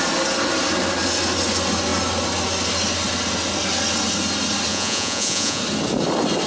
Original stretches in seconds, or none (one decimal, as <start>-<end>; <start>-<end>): 0.0-4.7; 5.6-6.5